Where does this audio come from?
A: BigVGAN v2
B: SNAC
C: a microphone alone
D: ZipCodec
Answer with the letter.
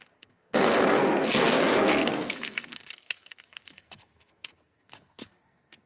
B